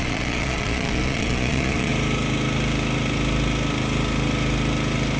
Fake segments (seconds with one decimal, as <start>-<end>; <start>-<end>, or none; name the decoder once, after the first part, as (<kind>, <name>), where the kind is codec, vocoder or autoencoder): 0.0-1.9 (vocoder, Vocos)